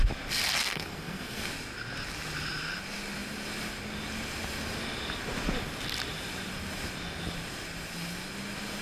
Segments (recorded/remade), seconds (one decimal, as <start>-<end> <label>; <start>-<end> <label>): 0.0-0.6 recorded; 0.6-1.4 remade; 1.4-8.8 recorded